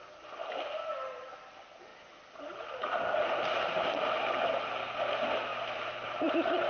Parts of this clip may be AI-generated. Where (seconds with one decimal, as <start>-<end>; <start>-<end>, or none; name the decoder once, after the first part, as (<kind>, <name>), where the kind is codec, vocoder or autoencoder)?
none